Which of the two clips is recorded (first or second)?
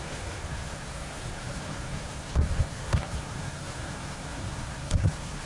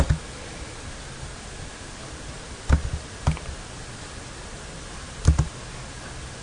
second